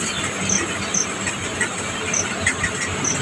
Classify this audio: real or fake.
real